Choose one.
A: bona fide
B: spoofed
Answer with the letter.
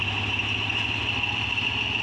A